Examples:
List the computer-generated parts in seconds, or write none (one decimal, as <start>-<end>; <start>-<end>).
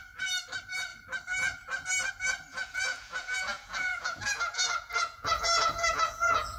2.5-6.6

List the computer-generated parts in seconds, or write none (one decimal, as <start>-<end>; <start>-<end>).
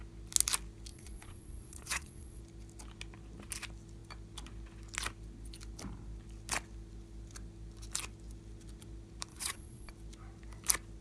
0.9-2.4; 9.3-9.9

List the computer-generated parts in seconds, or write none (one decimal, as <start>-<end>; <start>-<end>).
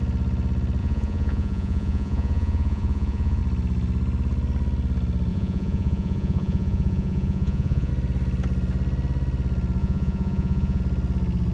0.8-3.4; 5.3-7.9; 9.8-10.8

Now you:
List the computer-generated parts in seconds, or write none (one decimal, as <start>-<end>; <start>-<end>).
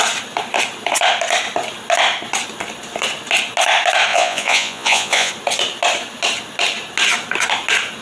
4.1-5.3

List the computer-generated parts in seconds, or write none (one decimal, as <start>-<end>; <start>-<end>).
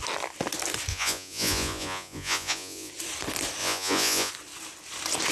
0.9-2.9; 3.6-4.3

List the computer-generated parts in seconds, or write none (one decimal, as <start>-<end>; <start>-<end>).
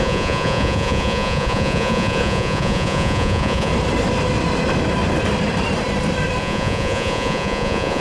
0.0-3.7; 6.4-8.0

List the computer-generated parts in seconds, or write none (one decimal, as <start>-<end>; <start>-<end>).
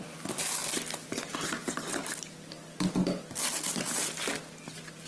none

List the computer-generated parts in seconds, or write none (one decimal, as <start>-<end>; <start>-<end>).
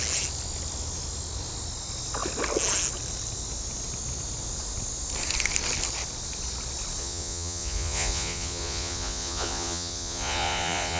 7.0-11.0